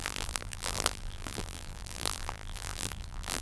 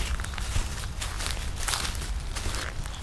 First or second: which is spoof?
first